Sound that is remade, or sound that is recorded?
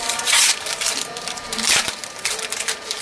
remade